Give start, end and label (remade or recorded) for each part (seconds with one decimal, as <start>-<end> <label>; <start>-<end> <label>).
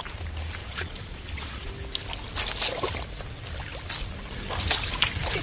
0.0-0.6 recorded; 0.6-1.7 remade; 1.7-5.4 recorded